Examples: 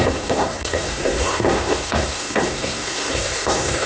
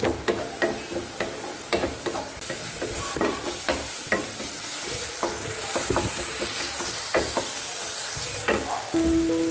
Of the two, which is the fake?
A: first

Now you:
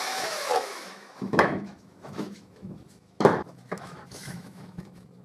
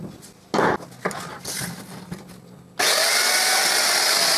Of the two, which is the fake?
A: first